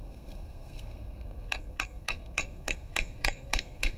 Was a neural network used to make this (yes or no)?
yes